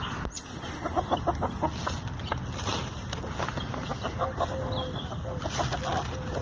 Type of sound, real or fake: real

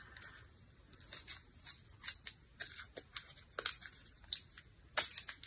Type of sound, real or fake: real